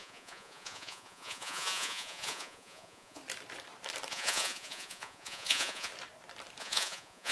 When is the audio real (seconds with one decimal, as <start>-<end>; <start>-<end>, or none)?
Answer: 3.2-4.1; 5.9-6.6

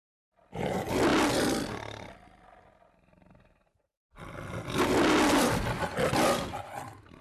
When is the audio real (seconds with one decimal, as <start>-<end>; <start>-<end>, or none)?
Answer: 0.0-7.2